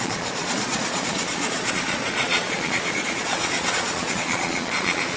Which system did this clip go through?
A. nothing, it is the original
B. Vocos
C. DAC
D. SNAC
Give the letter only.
B